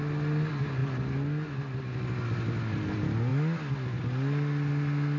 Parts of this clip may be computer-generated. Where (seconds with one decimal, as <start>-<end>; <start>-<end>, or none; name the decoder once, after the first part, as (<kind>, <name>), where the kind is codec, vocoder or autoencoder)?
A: none